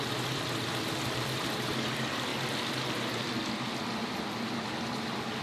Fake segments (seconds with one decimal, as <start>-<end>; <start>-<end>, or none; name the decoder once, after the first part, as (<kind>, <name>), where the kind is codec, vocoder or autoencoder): none